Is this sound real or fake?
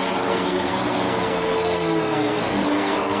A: fake